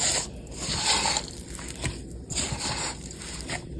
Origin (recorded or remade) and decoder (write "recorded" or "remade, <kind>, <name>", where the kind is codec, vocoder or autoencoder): recorded